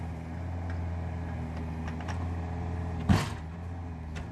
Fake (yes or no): no